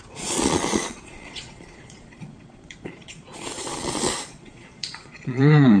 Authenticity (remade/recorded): remade